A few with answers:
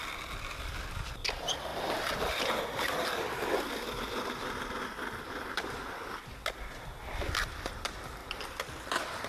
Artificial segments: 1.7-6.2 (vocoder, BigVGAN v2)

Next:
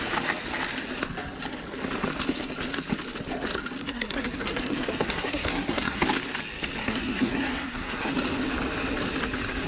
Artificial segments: 3.8-6.0 (codec, SNAC); 6.8-8.1

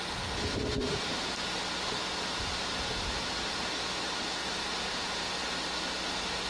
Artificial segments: 0.6-1.5 (vocoder, BigVGAN v2); 4.4-5.3